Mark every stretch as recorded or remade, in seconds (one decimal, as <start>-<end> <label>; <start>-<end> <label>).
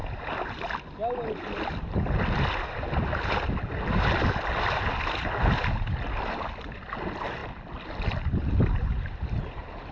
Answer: 0.0-9.9 recorded